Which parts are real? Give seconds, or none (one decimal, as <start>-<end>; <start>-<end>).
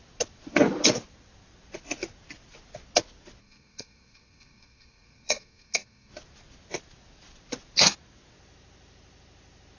0.0-3.4; 6.1-9.8